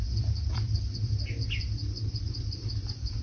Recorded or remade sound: recorded